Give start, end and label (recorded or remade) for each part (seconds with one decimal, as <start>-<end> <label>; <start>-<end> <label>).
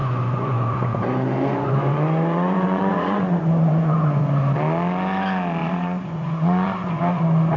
0.0-4.2 remade; 4.2-5.6 recorded; 5.6-7.0 remade; 7.0-7.6 recorded